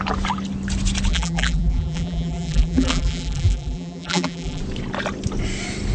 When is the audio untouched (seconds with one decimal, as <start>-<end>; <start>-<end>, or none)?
0.0-1.1; 4.6-5.9